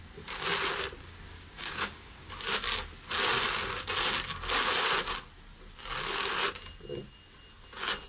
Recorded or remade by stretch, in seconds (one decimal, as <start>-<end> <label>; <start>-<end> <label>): 0.0-1.3 recorded; 1.3-2.3 remade; 2.3-8.1 recorded